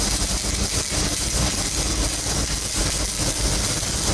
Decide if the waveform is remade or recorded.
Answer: recorded